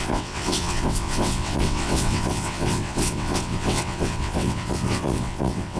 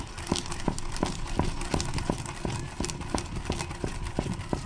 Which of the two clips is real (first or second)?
second